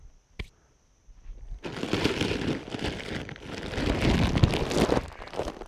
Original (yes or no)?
yes